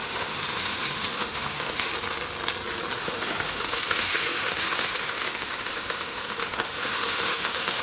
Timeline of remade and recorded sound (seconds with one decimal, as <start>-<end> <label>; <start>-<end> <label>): 0.0-1.9 remade; 1.9-3.0 recorded; 3.0-7.8 remade